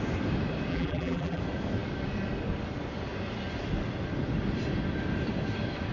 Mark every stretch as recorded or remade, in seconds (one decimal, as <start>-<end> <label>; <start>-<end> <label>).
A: 0.0-0.7 recorded; 0.7-1.4 remade; 1.4-5.9 recorded